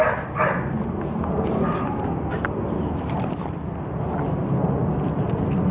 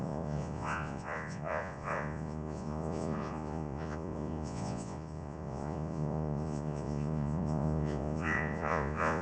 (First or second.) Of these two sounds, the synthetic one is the second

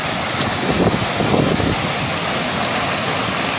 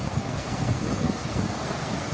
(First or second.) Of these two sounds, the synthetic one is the second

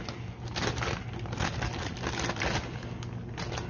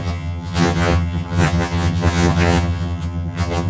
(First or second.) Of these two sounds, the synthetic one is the second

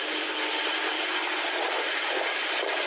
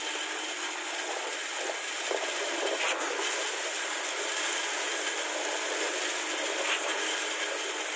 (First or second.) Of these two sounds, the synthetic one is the first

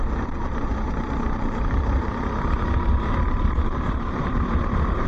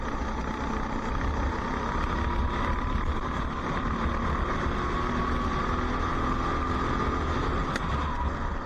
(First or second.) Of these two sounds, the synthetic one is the first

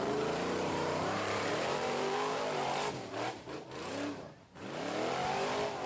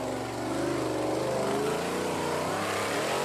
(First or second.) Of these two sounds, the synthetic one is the first